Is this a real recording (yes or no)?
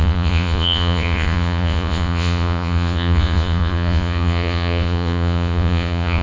no